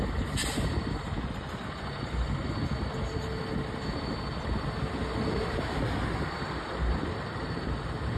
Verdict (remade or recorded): recorded